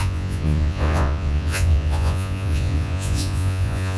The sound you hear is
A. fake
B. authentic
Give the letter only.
A